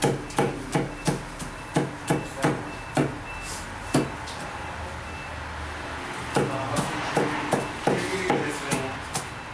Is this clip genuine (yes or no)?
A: yes